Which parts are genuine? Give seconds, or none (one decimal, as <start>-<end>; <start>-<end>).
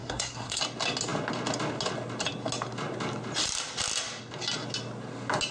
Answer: 0.6-5.5